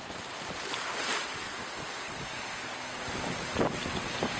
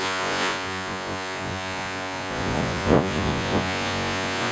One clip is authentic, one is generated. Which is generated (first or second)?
second